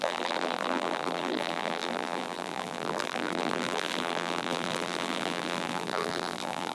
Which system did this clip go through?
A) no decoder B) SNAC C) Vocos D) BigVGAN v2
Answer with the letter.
D